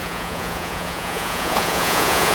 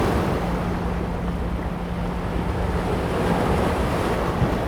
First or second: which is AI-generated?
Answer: first